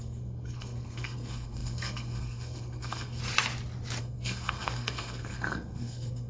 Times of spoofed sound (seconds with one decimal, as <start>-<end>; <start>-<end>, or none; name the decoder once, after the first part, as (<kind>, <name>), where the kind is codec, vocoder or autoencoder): 0.0-3.2 (codec, SNAC); 4.0-6.3